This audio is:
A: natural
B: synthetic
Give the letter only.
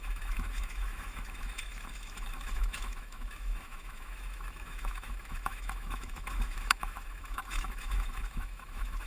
B